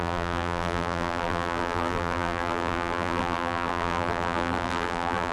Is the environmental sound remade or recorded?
remade